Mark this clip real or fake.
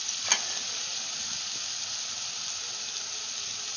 real